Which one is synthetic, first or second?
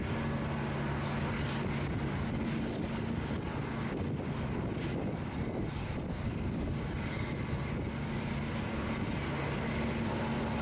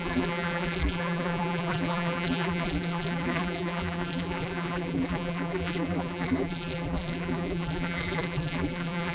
second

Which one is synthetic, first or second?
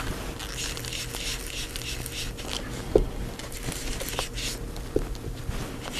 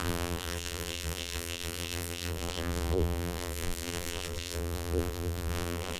second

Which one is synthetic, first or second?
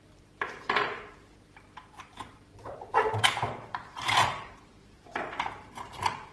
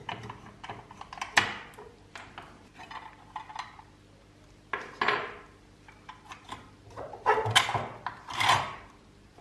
first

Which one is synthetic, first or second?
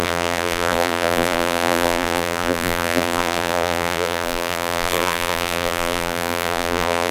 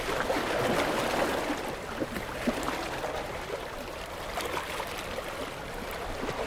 first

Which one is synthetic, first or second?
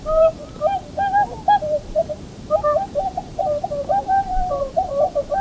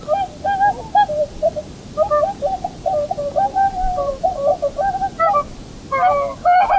first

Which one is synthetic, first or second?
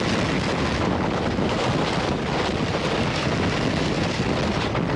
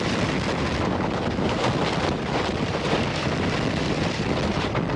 second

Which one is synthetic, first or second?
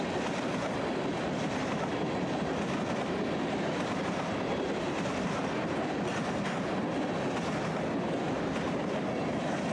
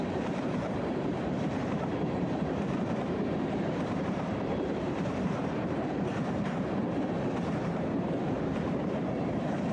second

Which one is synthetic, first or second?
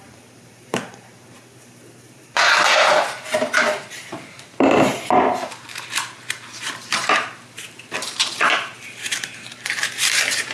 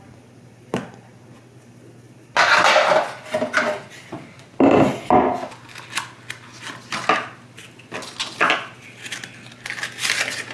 first